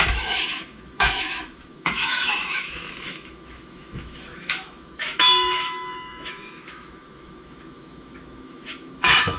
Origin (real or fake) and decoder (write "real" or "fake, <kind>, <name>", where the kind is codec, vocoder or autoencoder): fake, autoencoder, DAC-VAE